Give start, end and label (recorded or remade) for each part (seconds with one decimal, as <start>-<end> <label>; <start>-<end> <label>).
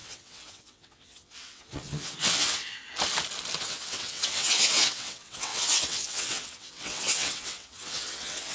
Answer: 0.0-2.8 remade; 2.8-3.6 recorded; 3.6-8.5 remade